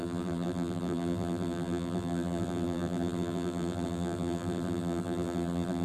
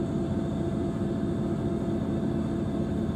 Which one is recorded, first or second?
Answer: second